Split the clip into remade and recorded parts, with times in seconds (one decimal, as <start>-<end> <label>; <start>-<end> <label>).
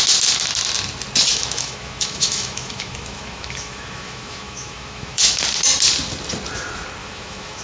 0.0-1.3 recorded; 1.3-5.4 remade; 5.4-7.0 recorded; 7.0-7.6 remade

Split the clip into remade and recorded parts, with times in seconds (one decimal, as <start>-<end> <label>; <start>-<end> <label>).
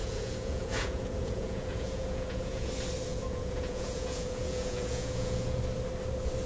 0.0-2.7 remade; 2.7-3.1 recorded; 3.1-5.6 remade; 5.6-6.5 recorded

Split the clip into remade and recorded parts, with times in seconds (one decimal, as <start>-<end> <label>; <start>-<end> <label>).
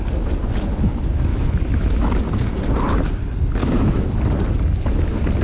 0.0-1.3 recorded; 1.3-2.1 remade; 2.1-3.6 recorded; 3.6-4.1 remade; 4.1-5.4 recorded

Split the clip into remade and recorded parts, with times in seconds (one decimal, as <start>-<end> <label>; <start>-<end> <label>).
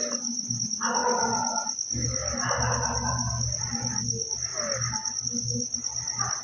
0.0-1.0 remade; 1.0-3.6 recorded; 3.6-6.4 remade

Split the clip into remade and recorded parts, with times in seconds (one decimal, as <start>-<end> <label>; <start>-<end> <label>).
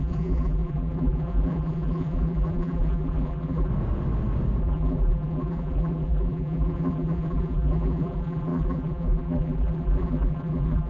0.0-3.7 remade; 3.7-4.6 recorded; 4.6-10.9 remade